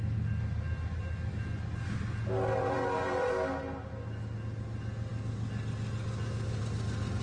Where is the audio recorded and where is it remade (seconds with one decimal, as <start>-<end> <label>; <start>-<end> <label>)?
0.0-2.6 recorded; 2.6-3.3 remade; 3.3-7.2 recorded